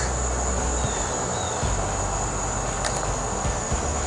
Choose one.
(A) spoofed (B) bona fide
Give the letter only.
B